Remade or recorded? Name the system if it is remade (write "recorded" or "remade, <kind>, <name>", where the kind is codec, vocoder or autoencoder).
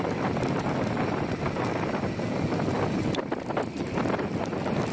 recorded